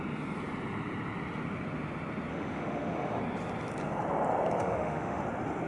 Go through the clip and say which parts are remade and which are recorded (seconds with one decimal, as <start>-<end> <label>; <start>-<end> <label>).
0.0-2.3 recorded; 2.3-3.2 remade; 3.2-4.6 recorded; 4.6-5.2 remade; 5.2-5.7 recorded